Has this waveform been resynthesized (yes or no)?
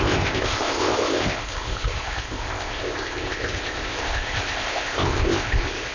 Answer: yes